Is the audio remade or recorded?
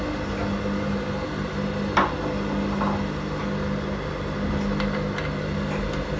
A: recorded